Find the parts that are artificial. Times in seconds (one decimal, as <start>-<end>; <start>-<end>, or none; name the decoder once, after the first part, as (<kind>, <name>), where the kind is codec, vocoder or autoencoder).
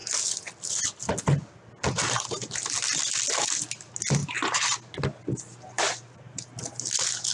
none